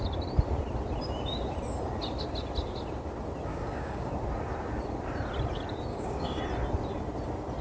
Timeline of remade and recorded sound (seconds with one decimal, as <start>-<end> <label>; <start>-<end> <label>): 0.0-3.5 recorded; 3.5-4.1 remade; 4.1-5.9 recorded; 5.9-6.4 remade; 6.4-7.6 recorded